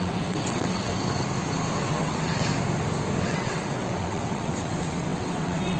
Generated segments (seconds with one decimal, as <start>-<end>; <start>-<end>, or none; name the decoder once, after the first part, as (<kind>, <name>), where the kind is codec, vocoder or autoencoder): 0.0-0.9 (vocoder, WaveNeXt); 1.8-2.5; 3.2-5.8